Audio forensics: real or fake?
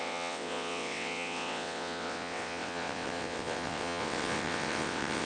fake